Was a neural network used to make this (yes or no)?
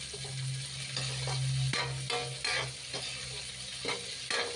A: no